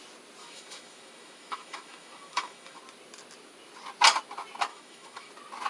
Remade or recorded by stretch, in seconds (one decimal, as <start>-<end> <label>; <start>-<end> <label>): 0.0-0.4 recorded; 0.4-2.8 remade; 2.8-4.7 recorded; 4.7-5.3 remade; 5.3-5.7 recorded